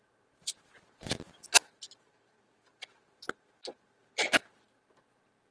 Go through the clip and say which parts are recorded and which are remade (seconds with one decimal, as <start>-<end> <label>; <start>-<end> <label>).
0.0-5.5 recorded